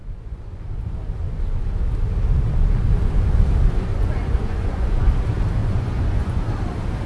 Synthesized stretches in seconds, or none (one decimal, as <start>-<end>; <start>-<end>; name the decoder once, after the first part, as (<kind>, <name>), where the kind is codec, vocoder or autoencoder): 0.0-0.6 (vocoder, Vocos); 1.2-1.9; 3.9-5.1; 5.6-6.4